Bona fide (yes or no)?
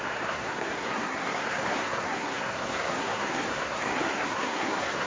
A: no